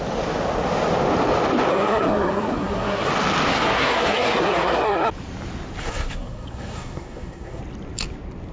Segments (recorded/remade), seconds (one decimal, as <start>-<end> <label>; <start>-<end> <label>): 0.0-1.7 recorded; 1.7-3.1 remade; 3.1-3.5 recorded; 3.5-5.1 remade; 5.1-5.8 recorded; 5.8-7.6 remade; 7.6-8.5 recorded